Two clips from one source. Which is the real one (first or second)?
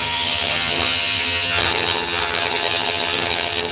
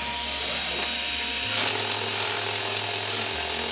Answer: second